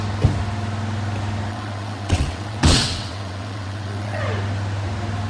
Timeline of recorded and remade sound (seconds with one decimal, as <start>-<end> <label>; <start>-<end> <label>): 0.0-1.5 recorded; 1.5-4.2 remade; 4.2-5.3 recorded